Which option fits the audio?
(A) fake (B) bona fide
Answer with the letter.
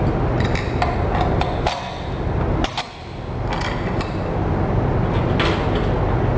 B